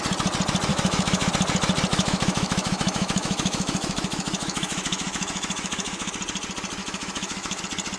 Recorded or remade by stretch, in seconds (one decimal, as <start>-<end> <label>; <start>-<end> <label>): 0.0-0.7 recorded; 0.7-1.3 remade; 1.3-1.9 recorded; 1.9-6.1 remade; 6.1-6.8 recorded; 6.8-7.6 remade; 7.6-8.0 recorded